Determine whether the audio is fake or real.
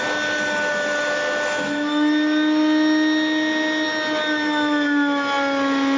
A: real